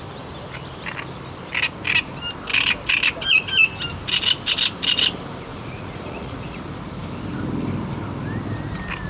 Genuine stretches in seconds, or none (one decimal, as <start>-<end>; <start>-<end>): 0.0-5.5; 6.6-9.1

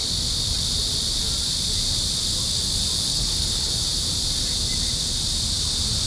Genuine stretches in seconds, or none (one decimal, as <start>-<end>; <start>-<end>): 0.0-3.1; 3.7-6.1

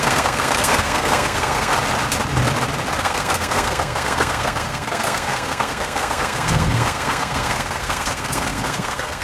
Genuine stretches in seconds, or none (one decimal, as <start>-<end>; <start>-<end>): 1.7-3.0

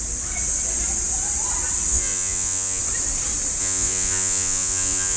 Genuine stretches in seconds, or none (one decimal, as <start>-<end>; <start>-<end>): 0.0-1.9; 2.8-3.6